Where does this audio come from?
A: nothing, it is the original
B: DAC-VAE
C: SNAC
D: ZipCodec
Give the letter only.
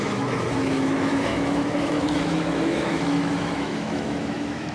B